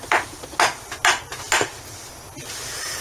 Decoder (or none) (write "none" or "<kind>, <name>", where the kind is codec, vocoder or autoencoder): none